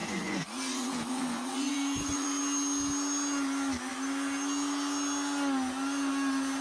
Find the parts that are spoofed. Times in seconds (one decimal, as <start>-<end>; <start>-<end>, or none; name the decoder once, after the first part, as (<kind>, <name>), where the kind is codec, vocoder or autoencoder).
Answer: 0.0-2.4 (vocoder, Vocos)

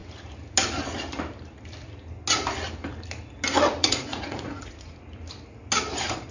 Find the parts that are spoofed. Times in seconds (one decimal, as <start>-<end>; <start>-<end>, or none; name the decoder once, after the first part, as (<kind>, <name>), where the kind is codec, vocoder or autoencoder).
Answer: 3.8-5.0 (vocoder, Vocos)

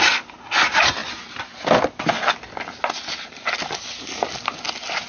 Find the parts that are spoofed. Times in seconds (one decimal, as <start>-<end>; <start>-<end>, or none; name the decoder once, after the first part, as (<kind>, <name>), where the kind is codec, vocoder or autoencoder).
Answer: none

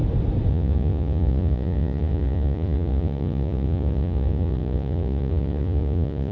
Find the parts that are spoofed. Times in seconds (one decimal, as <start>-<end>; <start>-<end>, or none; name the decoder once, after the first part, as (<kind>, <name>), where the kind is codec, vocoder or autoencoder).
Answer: 0.5-6.3 (vocoder, Vocos)

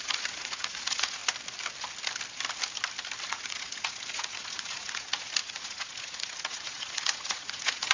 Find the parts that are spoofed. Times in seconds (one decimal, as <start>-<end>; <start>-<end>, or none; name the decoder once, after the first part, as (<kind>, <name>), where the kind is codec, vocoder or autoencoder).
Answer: 0.0-1.2 (vocoder, Vocos); 3.2-7.9

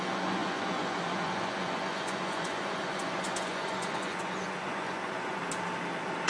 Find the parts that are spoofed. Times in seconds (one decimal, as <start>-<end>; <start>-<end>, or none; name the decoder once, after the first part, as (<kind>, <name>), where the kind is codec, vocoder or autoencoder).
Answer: 0.0-5.4 (vocoder, Vocos)

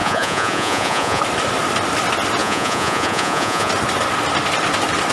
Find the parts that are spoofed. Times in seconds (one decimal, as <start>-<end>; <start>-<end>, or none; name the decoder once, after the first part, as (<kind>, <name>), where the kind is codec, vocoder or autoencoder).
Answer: 0.0-1.2 (vocoder, Vocos); 2.4-3.7

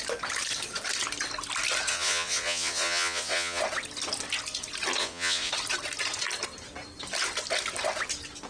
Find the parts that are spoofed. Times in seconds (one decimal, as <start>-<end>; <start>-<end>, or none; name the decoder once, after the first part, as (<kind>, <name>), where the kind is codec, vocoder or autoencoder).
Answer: 1.9-3.6 (vocoder, Vocos); 5.0-5.5